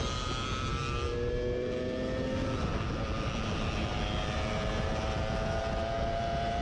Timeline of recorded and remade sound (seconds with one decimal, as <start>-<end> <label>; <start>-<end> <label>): 0.0-6.6 recorded